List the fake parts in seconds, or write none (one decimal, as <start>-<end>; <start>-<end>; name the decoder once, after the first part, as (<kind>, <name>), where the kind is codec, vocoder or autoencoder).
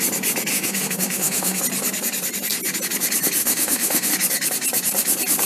0.5-1.6 (autoencoder, DAC-VAE); 3.4-4.1